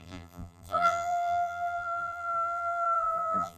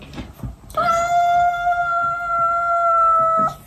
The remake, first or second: first